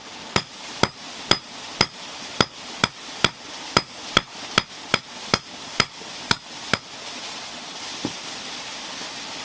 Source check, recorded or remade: recorded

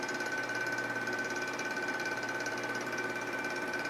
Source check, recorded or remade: remade